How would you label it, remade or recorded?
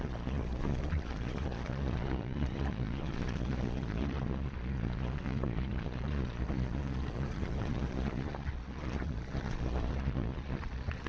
remade